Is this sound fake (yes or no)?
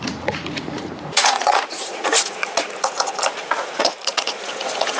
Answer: yes